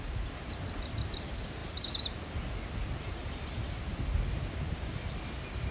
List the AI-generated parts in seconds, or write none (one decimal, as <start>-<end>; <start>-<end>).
none